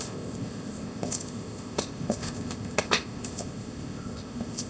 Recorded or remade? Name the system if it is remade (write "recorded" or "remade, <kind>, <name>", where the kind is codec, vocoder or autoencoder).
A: remade, codec, ZipCodec